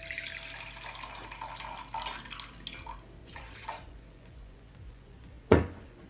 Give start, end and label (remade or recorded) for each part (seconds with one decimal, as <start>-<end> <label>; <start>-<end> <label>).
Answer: 0.0-3.2 recorded; 3.2-6.1 remade